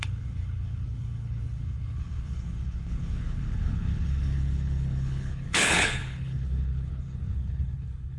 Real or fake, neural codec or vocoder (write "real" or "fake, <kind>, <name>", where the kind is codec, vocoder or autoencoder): fake, codec, HILCodec